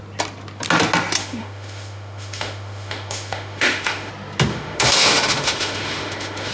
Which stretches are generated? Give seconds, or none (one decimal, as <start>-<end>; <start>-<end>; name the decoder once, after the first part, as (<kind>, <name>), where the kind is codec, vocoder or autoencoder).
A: 1.2-4.1 (autoencoder, DAC-VAE); 4.5-6.5